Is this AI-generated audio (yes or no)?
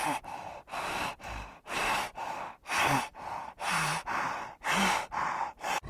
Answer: no